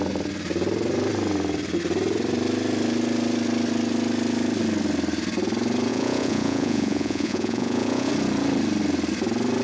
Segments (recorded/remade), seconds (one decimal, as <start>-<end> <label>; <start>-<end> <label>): 0.0-5.9 recorded; 5.9-8.1 remade; 8.1-9.6 recorded